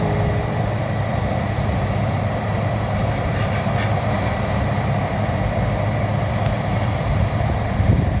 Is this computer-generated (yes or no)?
yes